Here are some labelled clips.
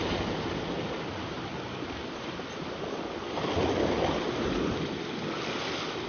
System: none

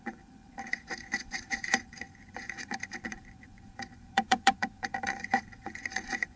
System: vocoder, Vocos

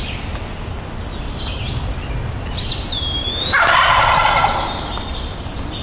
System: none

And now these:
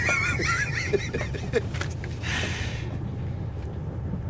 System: none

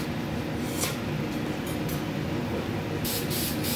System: none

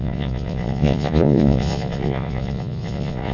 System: vocoder, Vocos